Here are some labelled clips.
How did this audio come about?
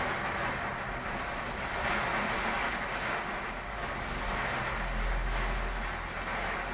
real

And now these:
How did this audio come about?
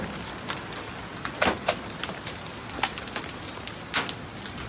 real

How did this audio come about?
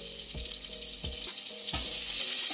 fake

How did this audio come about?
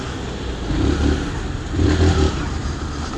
real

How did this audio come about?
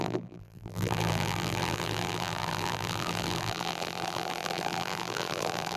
fake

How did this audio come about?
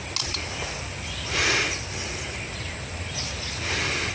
real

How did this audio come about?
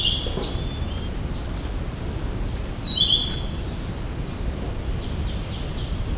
real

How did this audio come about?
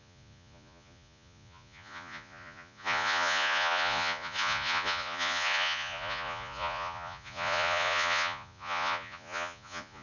fake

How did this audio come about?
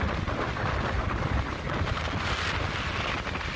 real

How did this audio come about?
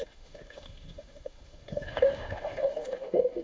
fake